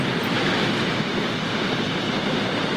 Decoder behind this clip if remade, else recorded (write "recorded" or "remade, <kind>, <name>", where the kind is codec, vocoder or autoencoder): recorded